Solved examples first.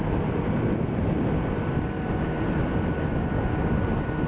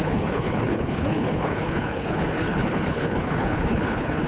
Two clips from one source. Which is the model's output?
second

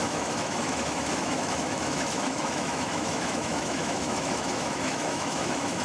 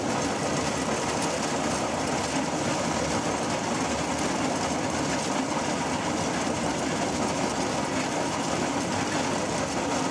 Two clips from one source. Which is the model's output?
first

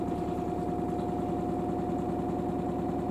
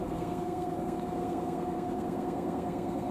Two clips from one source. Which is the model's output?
second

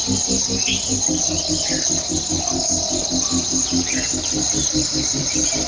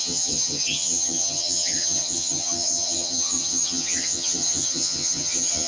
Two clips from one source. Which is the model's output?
second